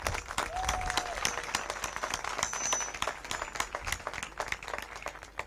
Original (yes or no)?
yes